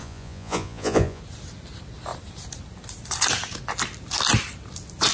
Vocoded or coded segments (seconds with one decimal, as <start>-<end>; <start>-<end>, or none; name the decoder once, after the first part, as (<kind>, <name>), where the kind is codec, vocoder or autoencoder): 0.0-1.2 (vocoder, Vocos)